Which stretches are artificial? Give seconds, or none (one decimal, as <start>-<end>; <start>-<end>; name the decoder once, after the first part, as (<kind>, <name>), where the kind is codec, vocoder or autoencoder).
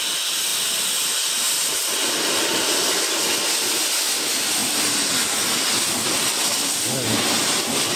none